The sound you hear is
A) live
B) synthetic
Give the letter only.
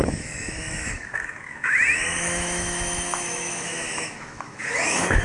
B